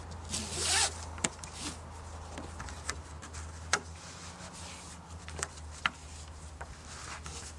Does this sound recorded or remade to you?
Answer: recorded